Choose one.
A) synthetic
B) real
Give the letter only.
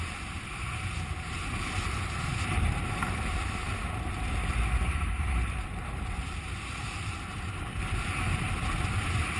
A